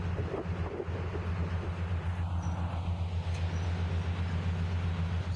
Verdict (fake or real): real